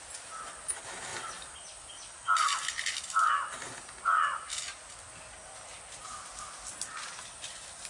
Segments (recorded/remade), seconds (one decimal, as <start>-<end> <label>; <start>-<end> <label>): 0.0-7.9 recorded